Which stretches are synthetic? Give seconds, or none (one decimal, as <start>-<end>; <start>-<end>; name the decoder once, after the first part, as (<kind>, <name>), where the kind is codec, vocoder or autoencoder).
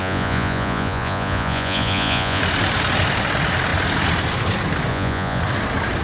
0.0-2.4 (vocoder, Vocos); 4.9-5.4